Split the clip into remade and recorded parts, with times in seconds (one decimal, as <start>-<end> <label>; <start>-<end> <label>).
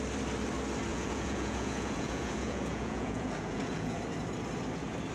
0.0-0.9 recorded; 0.9-4.0 remade; 4.0-5.1 recorded